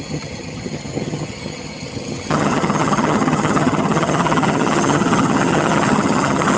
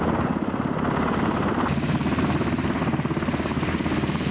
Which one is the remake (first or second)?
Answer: first